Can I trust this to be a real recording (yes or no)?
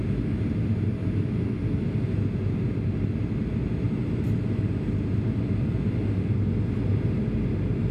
yes